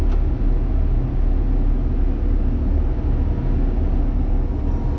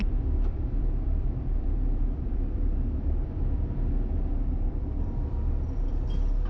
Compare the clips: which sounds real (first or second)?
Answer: first